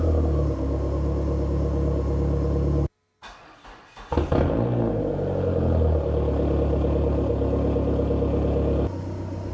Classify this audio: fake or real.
real